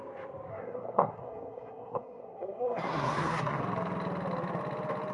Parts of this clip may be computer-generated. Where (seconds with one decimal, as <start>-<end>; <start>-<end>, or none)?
0.5-3.6